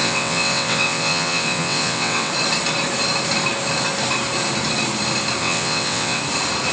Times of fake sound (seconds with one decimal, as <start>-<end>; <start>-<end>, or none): 0.0-2.3; 5.4-6.2